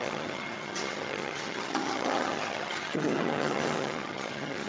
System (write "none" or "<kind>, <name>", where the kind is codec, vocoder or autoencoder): vocoder, HiFi-GAN